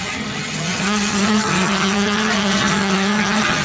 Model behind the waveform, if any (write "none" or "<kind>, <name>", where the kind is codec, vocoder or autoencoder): vocoder, HiFi-GAN